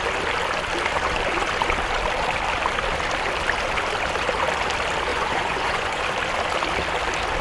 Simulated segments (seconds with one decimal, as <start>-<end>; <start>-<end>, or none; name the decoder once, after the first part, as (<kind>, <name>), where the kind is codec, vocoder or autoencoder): 5.1-6.0 (vocoder, Vocos)

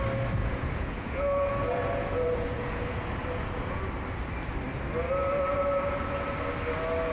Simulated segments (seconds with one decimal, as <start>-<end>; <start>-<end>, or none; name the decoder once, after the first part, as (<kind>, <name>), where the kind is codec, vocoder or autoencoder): 0.4-3.8 (vocoder, Vocos)

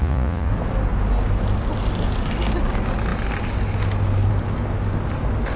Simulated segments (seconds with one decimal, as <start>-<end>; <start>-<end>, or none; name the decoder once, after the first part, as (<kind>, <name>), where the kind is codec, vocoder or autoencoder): 0.0-0.5 (vocoder, Vocos)

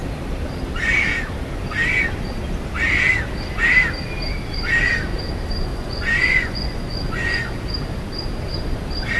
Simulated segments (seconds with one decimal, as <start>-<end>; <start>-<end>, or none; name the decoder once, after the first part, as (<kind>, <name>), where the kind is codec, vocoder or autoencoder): 5.7-7.5 (vocoder, Vocos)

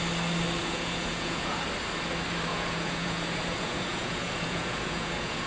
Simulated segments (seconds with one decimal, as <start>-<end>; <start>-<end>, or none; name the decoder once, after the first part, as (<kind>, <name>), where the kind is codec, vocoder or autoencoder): 0.6-1.6 (vocoder, Vocos); 2.5-5.5

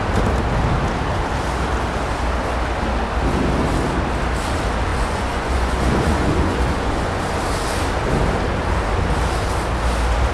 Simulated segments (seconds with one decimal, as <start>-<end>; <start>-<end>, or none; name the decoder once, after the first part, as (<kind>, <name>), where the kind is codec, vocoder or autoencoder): 4.9-7.2 (vocoder, Vocos)

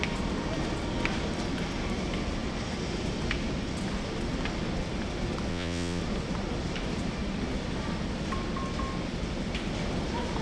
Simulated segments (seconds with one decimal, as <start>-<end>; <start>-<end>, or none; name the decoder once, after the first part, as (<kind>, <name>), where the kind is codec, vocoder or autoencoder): 5.5-6.0 (vocoder, Vocos)